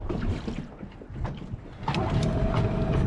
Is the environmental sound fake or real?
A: real